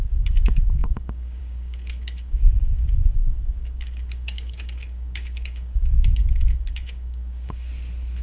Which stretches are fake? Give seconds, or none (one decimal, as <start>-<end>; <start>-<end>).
0.0-7.7